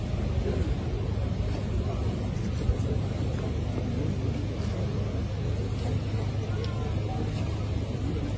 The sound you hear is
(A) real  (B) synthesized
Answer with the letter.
A